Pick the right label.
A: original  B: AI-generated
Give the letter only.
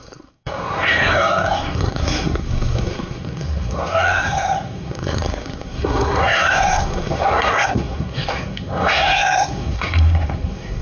B